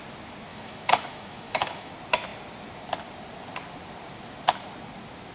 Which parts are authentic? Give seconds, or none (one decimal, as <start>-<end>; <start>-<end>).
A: 0.0-0.5; 1.9-5.3